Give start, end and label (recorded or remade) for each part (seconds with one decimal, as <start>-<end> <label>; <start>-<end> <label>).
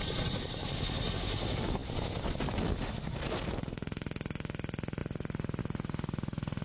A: 0.0-6.6 recorded